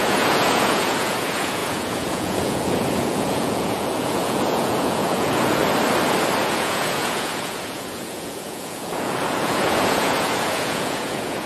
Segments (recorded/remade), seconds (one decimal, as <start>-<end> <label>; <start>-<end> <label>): 0.0-5.6 remade; 5.6-6.4 recorded; 6.4-11.5 remade